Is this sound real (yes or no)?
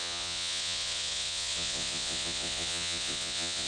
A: no